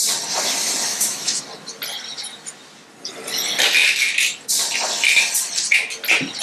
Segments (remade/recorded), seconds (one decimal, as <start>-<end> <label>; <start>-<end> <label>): 0.0-0.9 recorded; 0.9-1.4 remade; 1.4-6.4 recorded